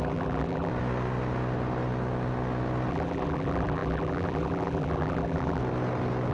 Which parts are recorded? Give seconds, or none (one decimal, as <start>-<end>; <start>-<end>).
0.7-2.9; 5.6-6.3